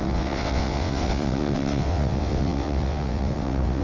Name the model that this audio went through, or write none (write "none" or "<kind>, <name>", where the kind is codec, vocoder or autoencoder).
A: vocoder, WaveNeXt